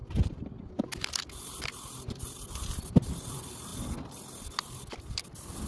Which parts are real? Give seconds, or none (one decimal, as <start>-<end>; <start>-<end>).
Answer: 0.0-5.7